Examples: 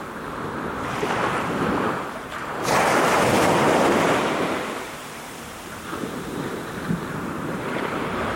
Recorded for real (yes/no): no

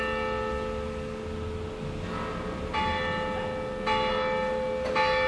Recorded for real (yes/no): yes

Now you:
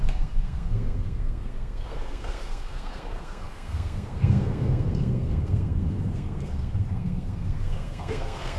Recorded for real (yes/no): no